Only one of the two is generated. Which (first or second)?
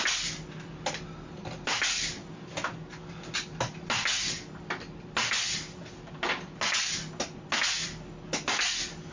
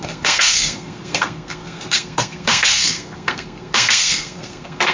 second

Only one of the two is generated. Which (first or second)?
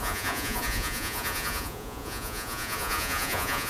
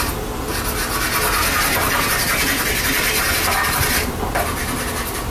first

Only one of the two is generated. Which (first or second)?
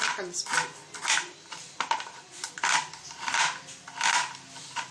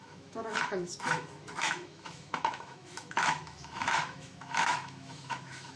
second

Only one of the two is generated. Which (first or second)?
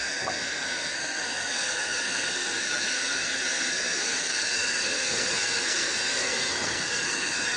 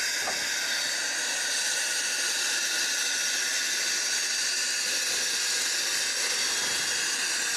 first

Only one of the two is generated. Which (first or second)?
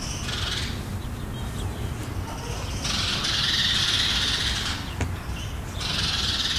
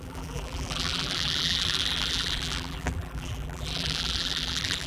second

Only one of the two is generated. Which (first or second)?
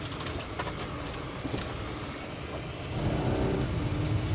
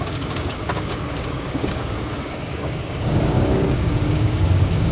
second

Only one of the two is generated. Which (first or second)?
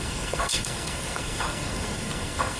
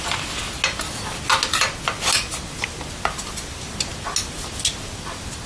first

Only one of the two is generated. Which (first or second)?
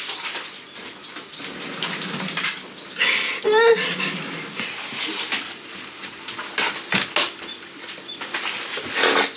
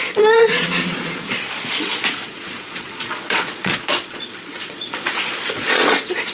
second